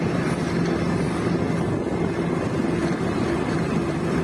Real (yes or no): yes